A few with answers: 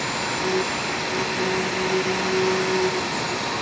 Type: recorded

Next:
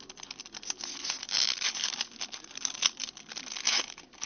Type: recorded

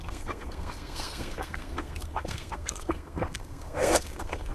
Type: remade